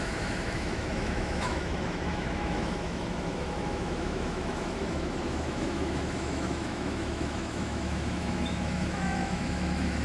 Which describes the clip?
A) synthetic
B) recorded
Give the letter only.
A